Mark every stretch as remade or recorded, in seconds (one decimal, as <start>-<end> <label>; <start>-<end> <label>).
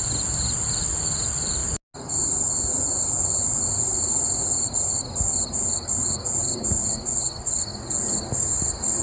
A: 0.0-9.0 recorded